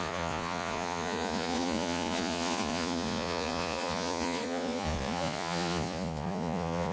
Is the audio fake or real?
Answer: fake